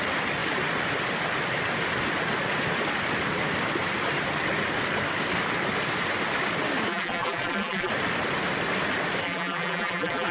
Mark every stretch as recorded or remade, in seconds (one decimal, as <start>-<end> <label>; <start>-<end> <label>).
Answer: 0.0-6.9 recorded; 6.9-7.9 remade; 7.9-9.2 recorded; 9.2-10.3 remade

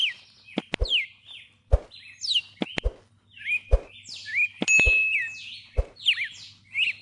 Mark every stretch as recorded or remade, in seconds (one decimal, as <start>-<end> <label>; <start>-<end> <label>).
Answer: 0.0-7.0 recorded

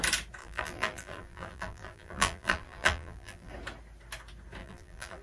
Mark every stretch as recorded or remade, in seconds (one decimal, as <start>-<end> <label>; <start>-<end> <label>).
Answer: 0.0-0.4 recorded; 0.4-3.5 remade; 3.5-4.6 recorded; 4.6-5.2 remade

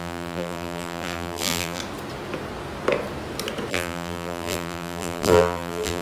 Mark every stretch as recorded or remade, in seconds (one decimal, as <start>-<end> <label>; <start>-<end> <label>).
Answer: 0.0-1.8 remade; 1.8-3.7 recorded; 3.7-6.0 remade

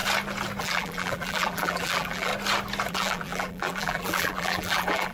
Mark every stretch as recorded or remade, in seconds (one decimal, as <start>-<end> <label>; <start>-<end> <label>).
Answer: 0.0-0.6 recorded; 0.6-2.3 remade; 2.3-2.9 recorded; 2.9-5.1 remade

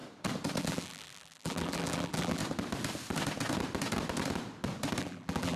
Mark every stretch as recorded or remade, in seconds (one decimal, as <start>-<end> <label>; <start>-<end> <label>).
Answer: 0.0-0.6 recorded; 0.6-2.4 remade; 2.4-5.0 recorded; 5.0-5.6 remade